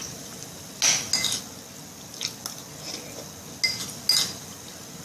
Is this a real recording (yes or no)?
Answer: yes